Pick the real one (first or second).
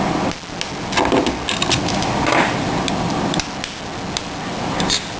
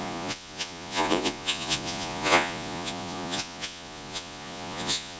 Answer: first